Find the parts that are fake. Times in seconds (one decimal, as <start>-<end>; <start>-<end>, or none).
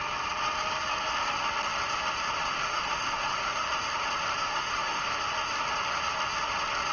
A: 2.5-3.7; 4.4-5.1